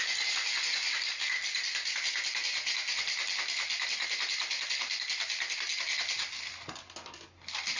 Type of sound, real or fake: real